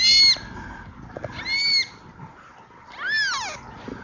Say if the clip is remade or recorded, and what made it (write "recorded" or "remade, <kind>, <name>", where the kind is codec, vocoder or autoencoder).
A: recorded